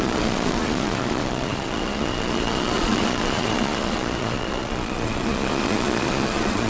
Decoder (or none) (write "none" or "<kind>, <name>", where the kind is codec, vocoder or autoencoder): vocoder, Vocos